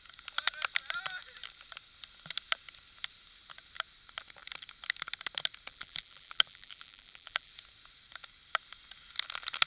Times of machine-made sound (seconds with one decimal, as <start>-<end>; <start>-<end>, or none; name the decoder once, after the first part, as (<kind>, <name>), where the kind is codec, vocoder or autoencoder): 5.7-7.5 (vocoder, BigVGAN v2)